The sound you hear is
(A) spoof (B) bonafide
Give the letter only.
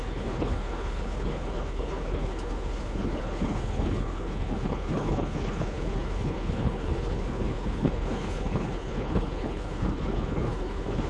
A